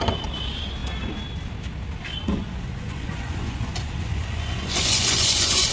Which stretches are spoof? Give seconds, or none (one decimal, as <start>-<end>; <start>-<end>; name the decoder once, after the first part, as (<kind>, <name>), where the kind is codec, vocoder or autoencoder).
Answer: 2.1-5.7 (vocoder, Vocos)